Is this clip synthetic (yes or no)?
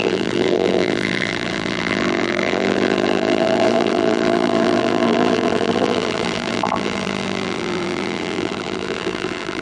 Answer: yes